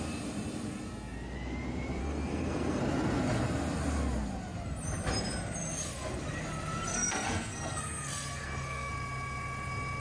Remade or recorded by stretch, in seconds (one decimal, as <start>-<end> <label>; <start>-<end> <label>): 0.0-2.0 recorded; 2.0-2.8 remade; 2.8-6.9 recorded; 6.9-8.9 remade; 8.9-10.0 recorded